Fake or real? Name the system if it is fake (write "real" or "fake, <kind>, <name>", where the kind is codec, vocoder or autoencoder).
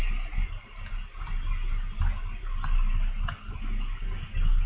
real